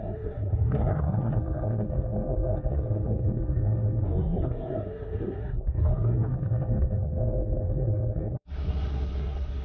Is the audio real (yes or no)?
no